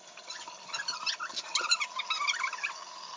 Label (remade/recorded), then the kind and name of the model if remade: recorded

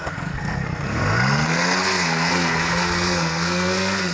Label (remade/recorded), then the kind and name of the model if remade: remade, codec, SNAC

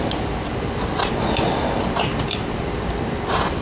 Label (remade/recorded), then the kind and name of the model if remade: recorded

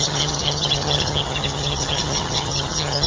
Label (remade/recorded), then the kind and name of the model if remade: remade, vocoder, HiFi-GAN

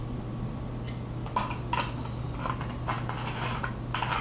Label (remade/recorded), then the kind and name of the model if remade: recorded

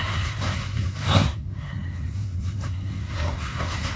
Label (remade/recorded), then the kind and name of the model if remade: remade, codec, SNAC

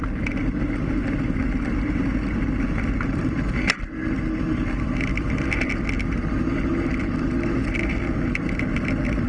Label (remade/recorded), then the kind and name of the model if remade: recorded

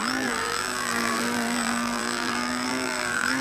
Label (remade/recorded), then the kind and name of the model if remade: remade, vocoder, BigVGAN v2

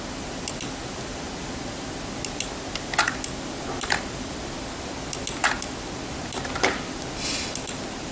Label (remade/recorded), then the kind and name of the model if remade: recorded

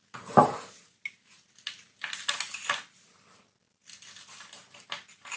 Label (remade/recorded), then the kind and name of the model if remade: recorded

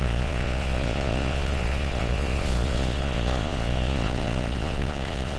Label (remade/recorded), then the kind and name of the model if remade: remade, vocoder, Vocos